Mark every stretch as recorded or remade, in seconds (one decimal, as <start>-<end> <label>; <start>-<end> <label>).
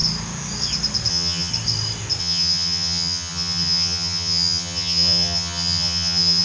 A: 0.0-1.1 recorded; 1.1-1.5 remade; 1.5-2.2 recorded; 2.2-6.4 remade